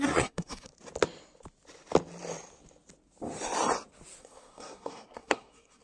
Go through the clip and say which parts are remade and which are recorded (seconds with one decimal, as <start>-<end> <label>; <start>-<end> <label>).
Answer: 0.0-0.7 remade; 0.7-4.2 recorded; 4.2-5.8 remade